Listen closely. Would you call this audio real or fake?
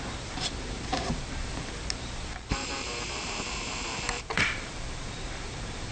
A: fake